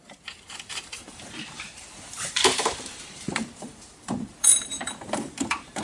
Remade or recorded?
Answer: remade